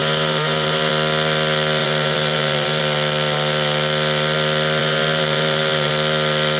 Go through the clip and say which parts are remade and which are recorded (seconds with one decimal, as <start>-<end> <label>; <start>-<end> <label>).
0.0-0.9 remade; 0.9-1.8 recorded; 1.8-2.8 remade; 2.8-4.8 recorded; 4.8-5.9 remade; 5.9-6.6 recorded